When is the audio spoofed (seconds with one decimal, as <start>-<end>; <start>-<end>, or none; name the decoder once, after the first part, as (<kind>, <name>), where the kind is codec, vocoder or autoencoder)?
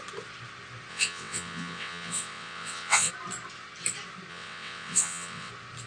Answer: 0.9-3.1 (vocoder, WaveNeXt); 4.3-5.5